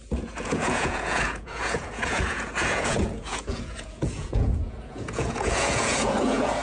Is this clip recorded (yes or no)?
no